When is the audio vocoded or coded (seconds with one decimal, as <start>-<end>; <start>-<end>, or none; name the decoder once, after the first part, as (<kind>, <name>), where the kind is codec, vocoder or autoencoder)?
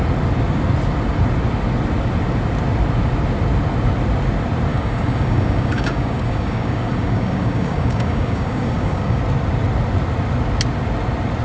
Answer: 4.7-9.2 (codec, DAC)